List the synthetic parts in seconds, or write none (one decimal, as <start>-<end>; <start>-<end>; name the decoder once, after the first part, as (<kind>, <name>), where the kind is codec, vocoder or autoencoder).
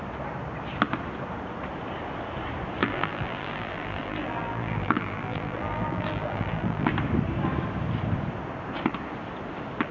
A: 2.8-6.9 (vocoder, BigVGAN v2)